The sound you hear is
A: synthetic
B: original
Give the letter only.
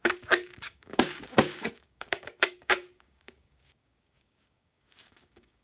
A